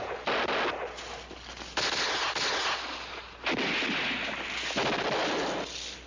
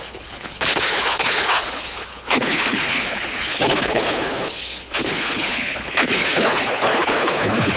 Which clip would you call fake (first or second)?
second